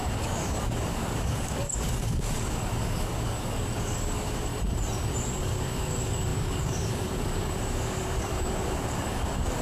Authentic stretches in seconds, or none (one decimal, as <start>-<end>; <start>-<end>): 4.5-5.4